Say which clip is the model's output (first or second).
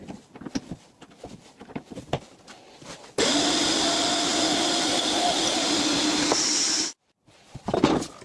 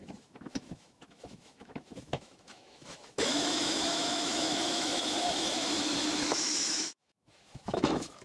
second